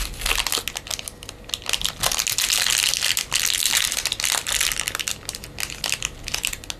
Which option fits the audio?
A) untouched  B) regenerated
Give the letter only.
A